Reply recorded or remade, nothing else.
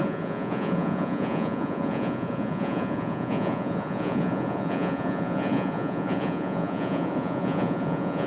remade